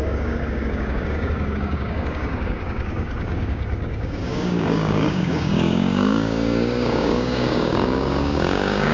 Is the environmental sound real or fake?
fake